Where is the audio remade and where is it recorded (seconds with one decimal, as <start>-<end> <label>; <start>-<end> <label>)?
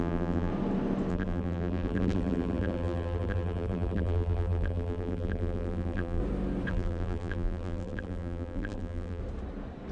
0.0-0.5 remade; 0.5-1.1 recorded; 1.1-6.2 remade; 6.2-6.7 recorded; 6.7-9.2 remade; 9.2-9.9 recorded